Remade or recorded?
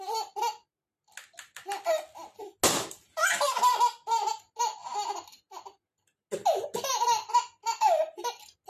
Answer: recorded